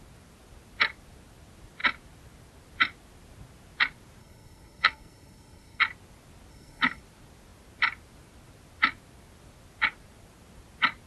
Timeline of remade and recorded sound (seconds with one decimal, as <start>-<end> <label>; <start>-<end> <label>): 0.0-4.2 recorded; 4.2-5.8 remade; 5.8-6.5 recorded; 6.5-7.0 remade; 7.0-11.1 recorded

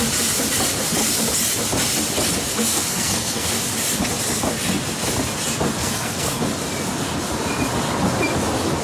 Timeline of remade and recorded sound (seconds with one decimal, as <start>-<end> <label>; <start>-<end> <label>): 0.0-2.5 recorded; 2.5-3.5 remade; 3.5-5.8 recorded; 5.8-6.4 remade; 6.4-8.8 recorded

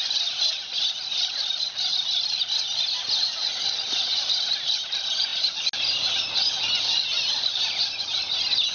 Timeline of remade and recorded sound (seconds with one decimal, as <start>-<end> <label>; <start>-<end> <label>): 0.0-8.7 recorded

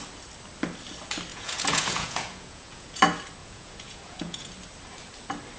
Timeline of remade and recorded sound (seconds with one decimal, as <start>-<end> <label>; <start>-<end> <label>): 0.0-1.3 recorded; 1.3-3.0 remade; 3.0-3.4 recorded; 3.4-4.5 remade; 4.5-5.6 recorded